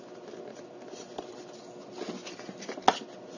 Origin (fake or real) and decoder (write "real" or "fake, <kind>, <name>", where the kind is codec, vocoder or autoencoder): real